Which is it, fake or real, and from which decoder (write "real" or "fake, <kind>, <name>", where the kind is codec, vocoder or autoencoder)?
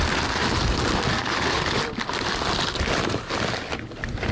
real